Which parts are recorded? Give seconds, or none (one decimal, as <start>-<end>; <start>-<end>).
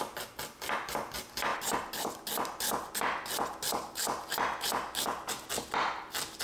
0.0-6.4